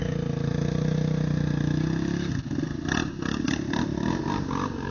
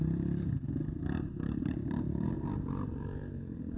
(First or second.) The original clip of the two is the first